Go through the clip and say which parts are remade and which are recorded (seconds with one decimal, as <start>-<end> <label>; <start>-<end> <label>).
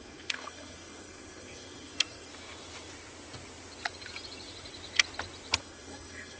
0.0-2.3 remade; 2.3-5.6 recorded; 5.6-6.4 remade